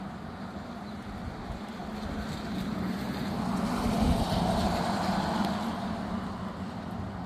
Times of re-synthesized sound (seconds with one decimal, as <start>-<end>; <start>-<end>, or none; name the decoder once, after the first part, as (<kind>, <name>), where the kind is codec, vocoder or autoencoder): none